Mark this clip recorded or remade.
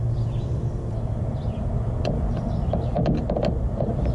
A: recorded